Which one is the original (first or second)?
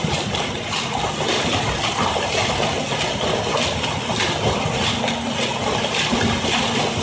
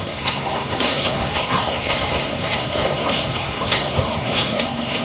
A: first